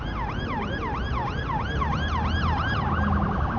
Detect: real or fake real